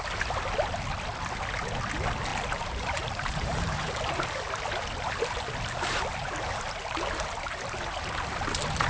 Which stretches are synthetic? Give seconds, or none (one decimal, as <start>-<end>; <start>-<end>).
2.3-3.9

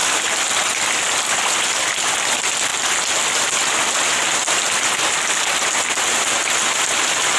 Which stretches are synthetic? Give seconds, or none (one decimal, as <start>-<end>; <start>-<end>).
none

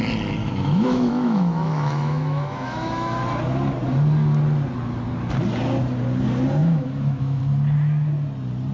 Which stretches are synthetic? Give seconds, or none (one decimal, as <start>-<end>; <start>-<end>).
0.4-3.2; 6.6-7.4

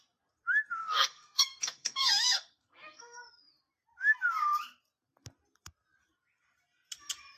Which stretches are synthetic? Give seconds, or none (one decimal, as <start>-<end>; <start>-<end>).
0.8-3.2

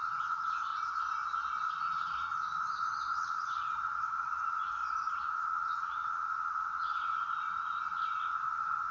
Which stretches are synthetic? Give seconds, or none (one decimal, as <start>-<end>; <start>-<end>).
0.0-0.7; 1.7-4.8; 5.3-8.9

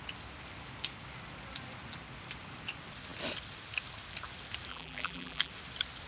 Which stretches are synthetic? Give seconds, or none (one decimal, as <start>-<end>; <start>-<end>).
4.7-5.5

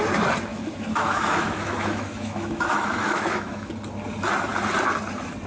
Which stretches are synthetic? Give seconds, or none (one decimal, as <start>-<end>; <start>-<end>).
0.5-3.7

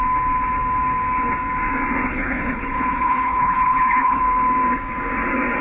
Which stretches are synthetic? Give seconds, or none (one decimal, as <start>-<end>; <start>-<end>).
2.1-4.2